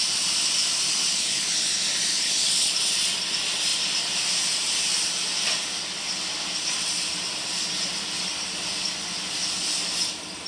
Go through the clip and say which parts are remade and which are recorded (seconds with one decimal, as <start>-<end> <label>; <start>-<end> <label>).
0.0-1.0 recorded; 1.0-1.7 remade; 1.7-2.1 recorded; 2.1-2.7 remade; 2.7-10.5 recorded

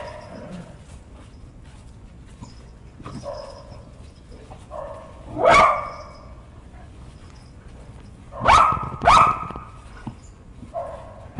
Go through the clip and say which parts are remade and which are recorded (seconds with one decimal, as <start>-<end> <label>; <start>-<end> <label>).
0.0-11.4 remade

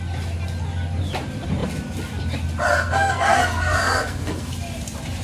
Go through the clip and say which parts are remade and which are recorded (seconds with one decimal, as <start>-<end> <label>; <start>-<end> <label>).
0.0-2.7 recorded; 2.7-4.5 remade; 4.5-5.2 recorded

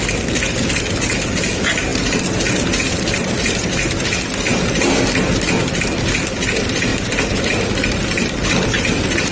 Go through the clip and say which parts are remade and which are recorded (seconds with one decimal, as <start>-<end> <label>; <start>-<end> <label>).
0.0-6.9 recorded; 6.9-7.5 remade; 7.5-9.3 recorded

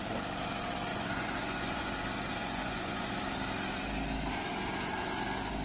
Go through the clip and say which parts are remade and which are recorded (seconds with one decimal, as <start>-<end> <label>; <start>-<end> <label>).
0.0-0.9 recorded; 0.9-1.9 remade; 1.9-2.4 recorded; 2.4-3.1 remade; 3.1-5.6 recorded